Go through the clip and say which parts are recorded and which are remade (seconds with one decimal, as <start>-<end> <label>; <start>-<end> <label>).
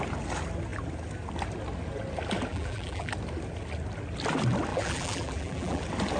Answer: 0.0-2.5 recorded; 2.5-3.1 remade; 3.1-4.7 recorded; 4.7-5.8 remade; 5.8-6.2 recorded